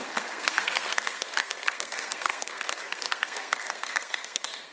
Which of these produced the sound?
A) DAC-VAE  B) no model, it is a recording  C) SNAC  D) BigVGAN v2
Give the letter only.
C